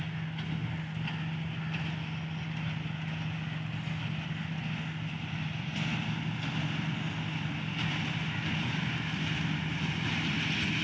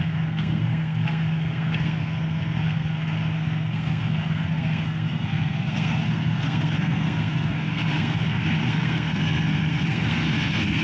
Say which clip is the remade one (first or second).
second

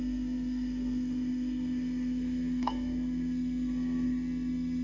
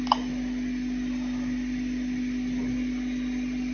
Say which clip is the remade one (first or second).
first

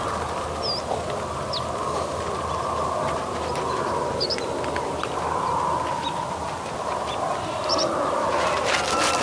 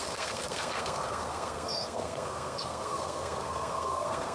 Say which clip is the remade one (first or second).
second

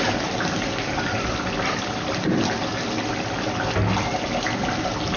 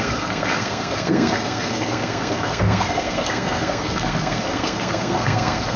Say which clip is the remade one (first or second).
second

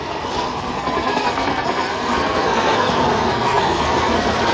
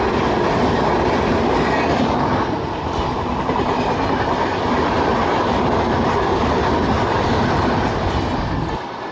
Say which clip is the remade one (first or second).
first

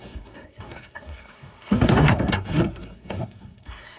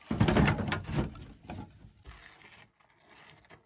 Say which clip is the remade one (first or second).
first